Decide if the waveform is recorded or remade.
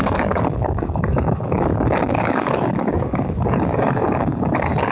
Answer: remade